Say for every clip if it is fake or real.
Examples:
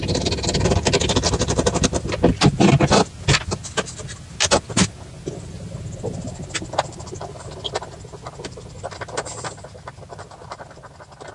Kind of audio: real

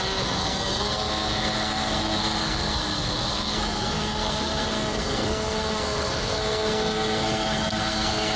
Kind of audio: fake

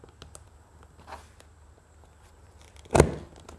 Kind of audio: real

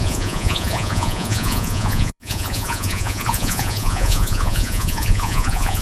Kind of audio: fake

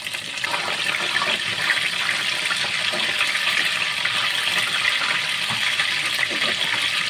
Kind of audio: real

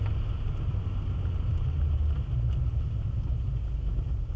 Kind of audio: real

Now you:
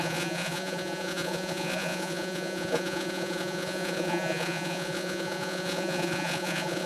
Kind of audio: fake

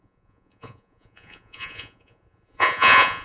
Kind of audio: fake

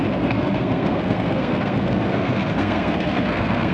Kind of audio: fake